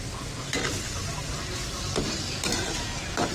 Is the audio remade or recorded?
recorded